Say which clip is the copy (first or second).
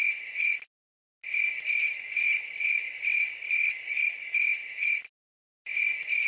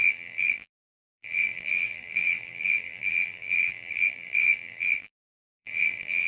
second